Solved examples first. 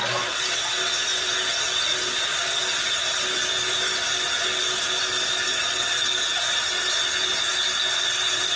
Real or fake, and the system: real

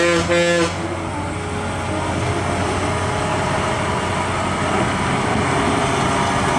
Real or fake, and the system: real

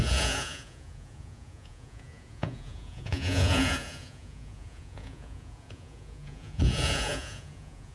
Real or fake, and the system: fake, vocoder, Vocos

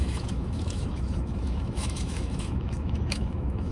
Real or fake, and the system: fake, autoencoder, DAC-VAE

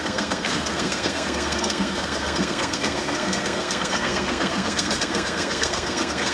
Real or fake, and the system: fake, codec, SNAC